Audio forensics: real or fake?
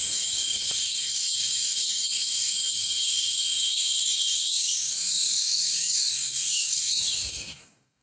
fake